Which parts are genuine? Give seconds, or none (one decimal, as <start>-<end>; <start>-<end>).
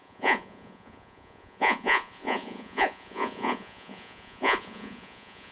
none